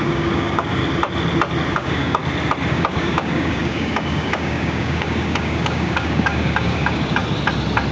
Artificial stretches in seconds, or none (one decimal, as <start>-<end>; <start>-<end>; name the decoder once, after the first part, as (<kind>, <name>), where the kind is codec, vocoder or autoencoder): 0.0-0.8 (codec, DAC); 1.7-2.2; 2.7-7.2